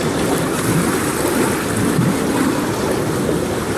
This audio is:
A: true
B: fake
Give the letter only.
A